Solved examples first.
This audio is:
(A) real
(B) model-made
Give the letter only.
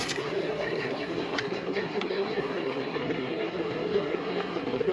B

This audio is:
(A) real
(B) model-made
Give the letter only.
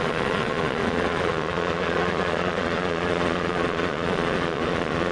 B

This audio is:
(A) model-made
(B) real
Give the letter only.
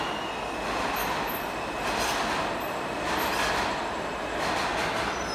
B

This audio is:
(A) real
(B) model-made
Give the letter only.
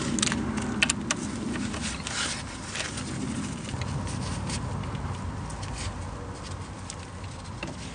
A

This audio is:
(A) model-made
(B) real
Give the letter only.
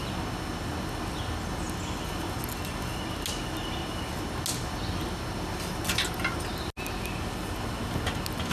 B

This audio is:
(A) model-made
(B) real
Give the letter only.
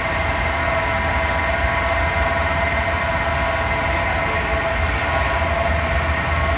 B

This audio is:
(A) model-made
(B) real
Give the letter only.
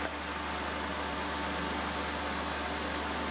B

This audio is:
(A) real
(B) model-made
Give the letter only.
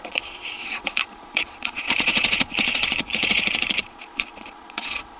B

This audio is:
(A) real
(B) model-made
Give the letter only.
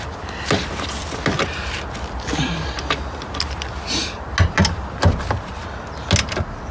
A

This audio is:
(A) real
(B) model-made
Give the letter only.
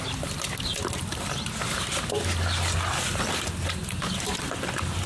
A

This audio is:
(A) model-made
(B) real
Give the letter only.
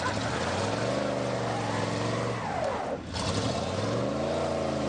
B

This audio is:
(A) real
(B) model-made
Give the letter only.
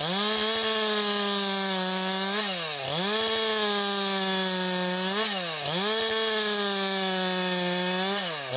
A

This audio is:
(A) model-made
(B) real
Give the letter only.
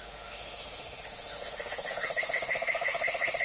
A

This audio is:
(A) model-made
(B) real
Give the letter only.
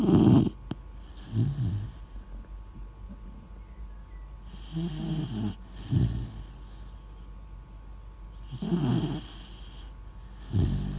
B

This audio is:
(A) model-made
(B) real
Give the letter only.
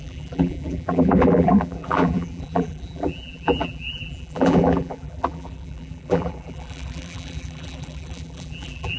A